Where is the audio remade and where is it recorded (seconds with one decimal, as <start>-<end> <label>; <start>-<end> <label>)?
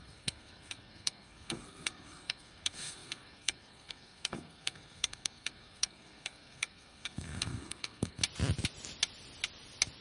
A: 0.0-8.2 remade; 8.2-10.0 recorded